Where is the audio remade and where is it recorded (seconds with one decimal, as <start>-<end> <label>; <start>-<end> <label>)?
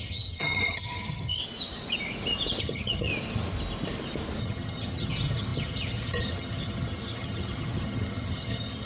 0.0-1.4 remade; 1.4-2.6 recorded; 2.6-3.1 remade; 3.1-4.4 recorded; 4.4-8.9 remade